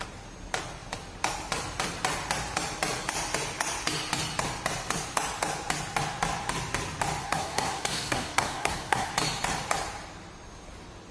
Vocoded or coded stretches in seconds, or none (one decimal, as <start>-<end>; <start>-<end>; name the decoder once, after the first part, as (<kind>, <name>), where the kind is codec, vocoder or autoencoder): 7.2-9.1 (codec, SNAC)

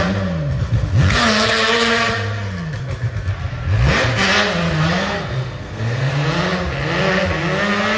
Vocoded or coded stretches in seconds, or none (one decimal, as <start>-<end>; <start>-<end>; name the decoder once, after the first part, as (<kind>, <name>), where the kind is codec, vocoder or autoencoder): 5.0-6.1 (codec, SNAC)

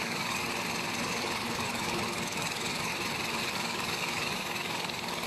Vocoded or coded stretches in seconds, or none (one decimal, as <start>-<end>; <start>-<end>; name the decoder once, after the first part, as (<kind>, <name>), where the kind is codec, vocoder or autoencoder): 0.0-0.5 (codec, DAC); 1.1-2.9; 3.5-5.3

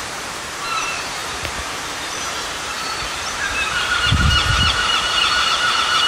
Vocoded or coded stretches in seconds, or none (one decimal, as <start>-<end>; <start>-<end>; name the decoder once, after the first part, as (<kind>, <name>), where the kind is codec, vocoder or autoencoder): 0.0-6.1 (vocoder, BigVGAN v2)

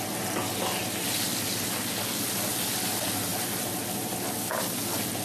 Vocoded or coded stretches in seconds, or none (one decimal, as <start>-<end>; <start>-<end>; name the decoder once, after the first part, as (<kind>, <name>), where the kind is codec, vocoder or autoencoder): none